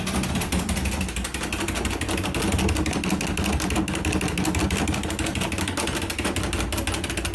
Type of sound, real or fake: real